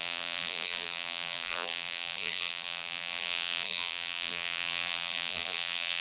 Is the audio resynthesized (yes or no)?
yes